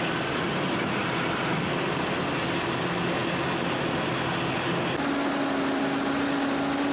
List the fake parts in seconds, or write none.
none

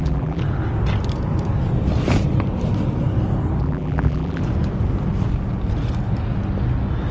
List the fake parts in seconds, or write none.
0.0-0.4; 3.6-4.4

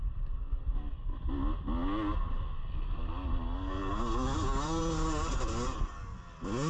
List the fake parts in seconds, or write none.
none

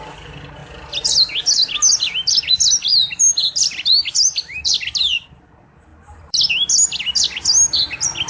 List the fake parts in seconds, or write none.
2.9-5.5; 5.9-6.5

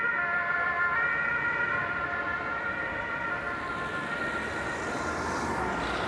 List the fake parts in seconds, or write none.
1.8-4.1

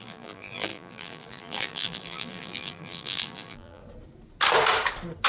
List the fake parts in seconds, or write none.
0.0-3.8